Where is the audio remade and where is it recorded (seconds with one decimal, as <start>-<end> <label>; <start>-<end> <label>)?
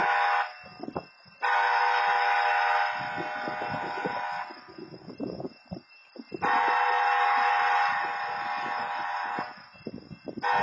0.0-10.6 recorded